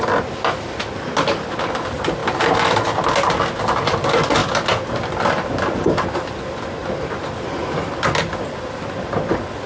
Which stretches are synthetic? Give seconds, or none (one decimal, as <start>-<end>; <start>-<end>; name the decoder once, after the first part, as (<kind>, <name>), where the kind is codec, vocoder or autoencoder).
none